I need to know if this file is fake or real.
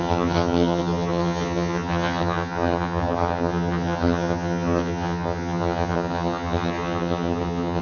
fake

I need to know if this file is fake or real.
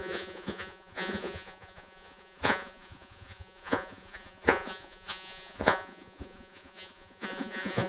fake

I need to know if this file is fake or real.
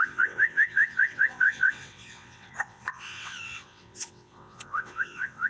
fake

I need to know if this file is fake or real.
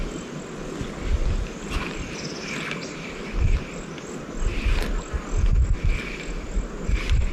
real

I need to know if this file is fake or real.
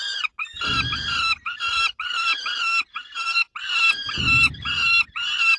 real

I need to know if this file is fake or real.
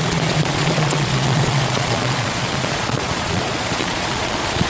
fake